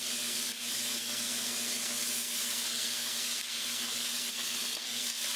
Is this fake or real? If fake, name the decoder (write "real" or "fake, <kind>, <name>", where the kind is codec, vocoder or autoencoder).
fake, codec, SNAC